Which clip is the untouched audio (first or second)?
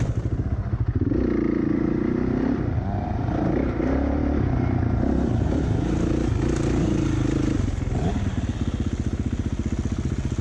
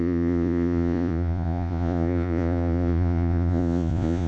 first